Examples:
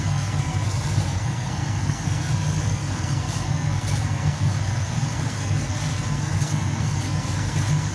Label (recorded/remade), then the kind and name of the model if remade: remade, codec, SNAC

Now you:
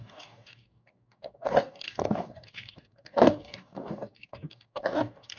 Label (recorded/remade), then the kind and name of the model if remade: remade, codec, DAC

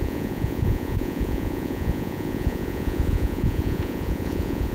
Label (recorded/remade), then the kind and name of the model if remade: remade, vocoder, Vocos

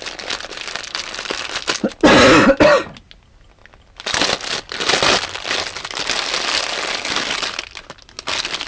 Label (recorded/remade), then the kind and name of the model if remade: recorded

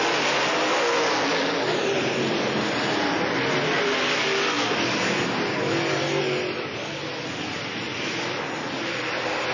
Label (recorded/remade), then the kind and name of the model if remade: recorded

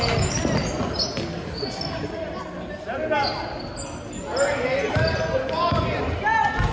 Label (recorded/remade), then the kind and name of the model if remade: recorded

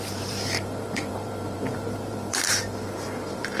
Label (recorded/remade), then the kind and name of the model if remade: remade, vocoder, BigVGAN v2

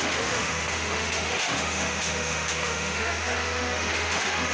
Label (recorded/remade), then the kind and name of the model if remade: remade, autoencoder, DAC-VAE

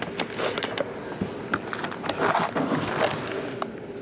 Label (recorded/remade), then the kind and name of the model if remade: recorded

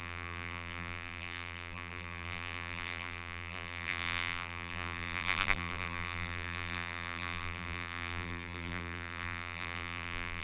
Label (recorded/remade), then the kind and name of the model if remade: remade, vocoder, BigVGAN v2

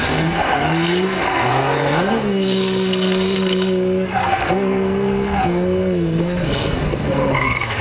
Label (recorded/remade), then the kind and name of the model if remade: remade, codec, SNAC